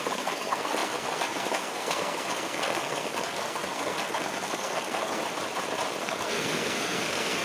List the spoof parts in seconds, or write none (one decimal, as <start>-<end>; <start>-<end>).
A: 0.0-5.2; 6.0-7.4